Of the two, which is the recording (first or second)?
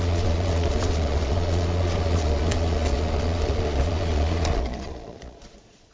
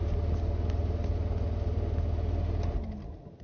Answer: second